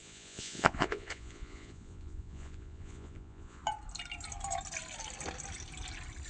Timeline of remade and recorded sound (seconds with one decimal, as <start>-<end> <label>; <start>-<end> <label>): 0.0-3.6 remade; 3.6-6.3 recorded